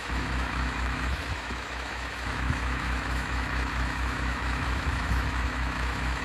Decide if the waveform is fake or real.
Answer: fake